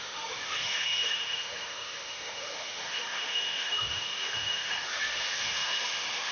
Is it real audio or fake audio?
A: fake